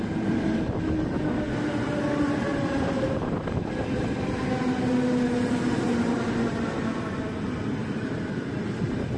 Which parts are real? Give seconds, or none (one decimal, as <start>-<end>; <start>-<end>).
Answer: 0.0-2.5; 3.7-5.4; 7.1-7.8; 8.5-9.2